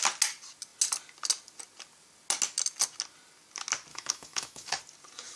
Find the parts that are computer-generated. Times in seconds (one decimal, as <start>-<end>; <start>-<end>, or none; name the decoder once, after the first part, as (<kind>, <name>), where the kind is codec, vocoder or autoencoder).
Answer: 3.9-4.8 (autoencoder, DAC-VAE)